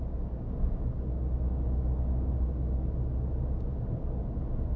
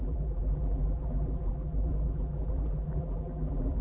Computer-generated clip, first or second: second